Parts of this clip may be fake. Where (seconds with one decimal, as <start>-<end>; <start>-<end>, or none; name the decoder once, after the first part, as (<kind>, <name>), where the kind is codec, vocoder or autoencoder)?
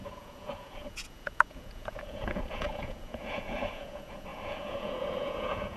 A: 0.0-5.8 (vocoder, Vocos)